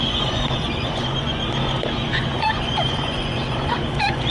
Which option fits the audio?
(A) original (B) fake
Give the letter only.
B